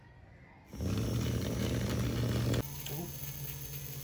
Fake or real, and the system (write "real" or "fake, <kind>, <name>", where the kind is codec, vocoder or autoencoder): real